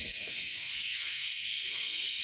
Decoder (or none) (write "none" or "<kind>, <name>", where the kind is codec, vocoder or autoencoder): codec, SNAC